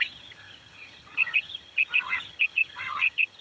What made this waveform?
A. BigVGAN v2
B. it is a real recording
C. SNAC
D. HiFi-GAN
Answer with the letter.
D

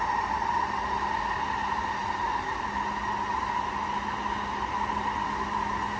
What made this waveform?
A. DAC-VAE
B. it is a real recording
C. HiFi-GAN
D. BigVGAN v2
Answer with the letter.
B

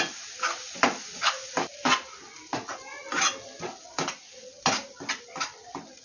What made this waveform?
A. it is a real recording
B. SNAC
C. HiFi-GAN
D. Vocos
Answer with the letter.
A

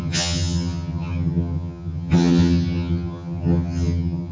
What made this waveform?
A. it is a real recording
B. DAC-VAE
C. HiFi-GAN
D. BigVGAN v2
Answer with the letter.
C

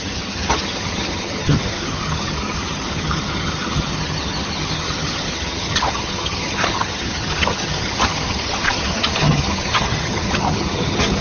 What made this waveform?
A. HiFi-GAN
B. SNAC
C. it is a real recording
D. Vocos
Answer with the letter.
A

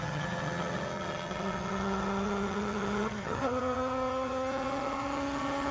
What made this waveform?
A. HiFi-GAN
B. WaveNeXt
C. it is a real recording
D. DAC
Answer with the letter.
A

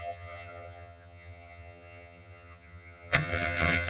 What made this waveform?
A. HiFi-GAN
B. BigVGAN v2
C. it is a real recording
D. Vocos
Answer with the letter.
A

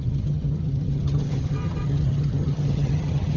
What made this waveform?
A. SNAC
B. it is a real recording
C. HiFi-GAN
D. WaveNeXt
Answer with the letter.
C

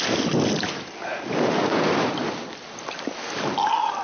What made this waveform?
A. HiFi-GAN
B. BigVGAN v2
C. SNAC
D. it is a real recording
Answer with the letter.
D